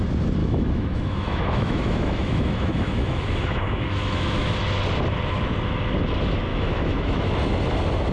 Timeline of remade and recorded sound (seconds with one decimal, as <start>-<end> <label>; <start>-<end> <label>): 0.0-0.4 recorded; 0.4-4.5 remade; 4.5-6.5 recorded; 6.5-7.3 remade; 7.3-8.1 recorded